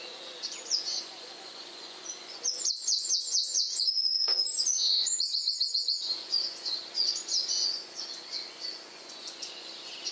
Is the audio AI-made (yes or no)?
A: yes